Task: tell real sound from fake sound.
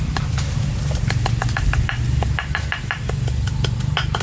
real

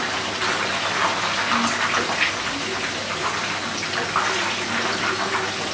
real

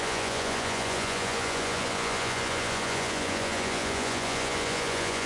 fake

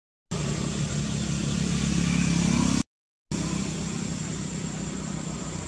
real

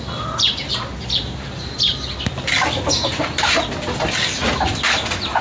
real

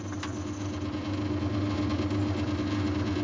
real